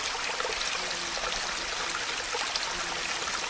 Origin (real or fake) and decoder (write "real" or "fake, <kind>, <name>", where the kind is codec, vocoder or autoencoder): real